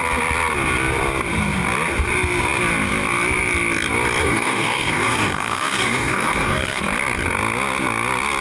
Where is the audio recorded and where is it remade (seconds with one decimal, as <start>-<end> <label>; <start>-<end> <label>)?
0.0-4.2 recorded; 4.2-6.8 remade; 6.8-8.4 recorded